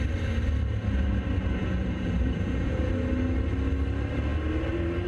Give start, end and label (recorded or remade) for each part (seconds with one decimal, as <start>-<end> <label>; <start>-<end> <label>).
0.0-1.6 recorded; 1.6-2.9 remade; 2.9-5.1 recorded